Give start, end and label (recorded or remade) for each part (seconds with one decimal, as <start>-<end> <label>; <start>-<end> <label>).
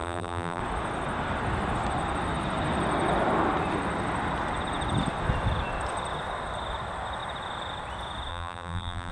0.0-0.6 remade; 0.6-8.3 recorded; 8.3-9.1 remade